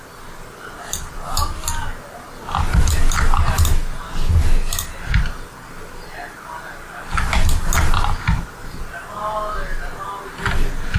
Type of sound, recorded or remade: recorded